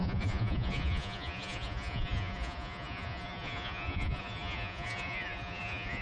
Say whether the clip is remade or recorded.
remade